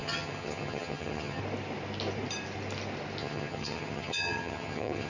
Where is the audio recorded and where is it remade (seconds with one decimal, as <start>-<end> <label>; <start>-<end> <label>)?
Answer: 0.0-1.4 remade; 1.4-3.2 recorded; 3.2-5.1 remade